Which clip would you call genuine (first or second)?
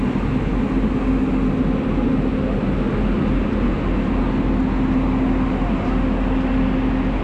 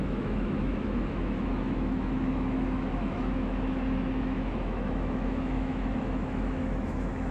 first